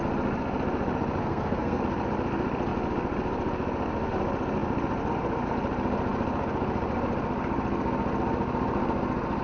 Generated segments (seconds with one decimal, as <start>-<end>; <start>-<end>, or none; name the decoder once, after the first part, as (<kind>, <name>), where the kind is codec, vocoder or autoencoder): 1.2-1.8 (codec, SNAC)